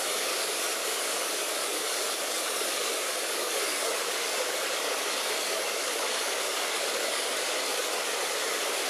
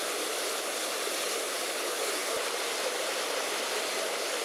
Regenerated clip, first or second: first